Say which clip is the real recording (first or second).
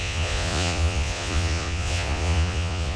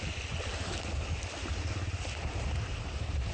second